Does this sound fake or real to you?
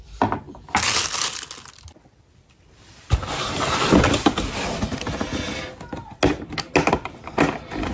real